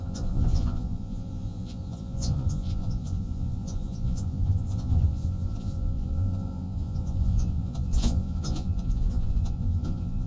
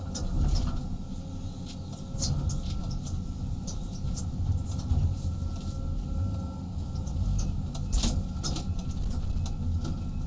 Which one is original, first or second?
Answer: second